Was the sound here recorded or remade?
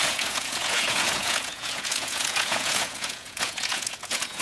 remade